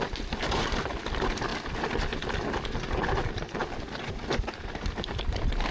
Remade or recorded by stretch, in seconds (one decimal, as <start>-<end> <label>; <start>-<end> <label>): 0.0-5.7 recorded